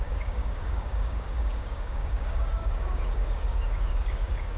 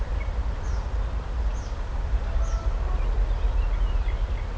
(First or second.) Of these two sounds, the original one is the second